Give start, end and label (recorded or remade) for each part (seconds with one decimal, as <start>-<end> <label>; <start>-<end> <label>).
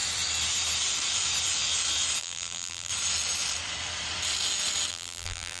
0.0-2.2 recorded; 2.2-2.9 remade; 2.9-4.9 recorded; 4.9-5.6 remade